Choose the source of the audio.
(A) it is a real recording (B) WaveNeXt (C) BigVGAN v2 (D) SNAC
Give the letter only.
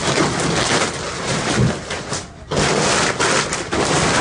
A